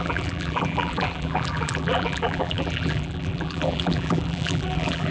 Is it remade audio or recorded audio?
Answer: remade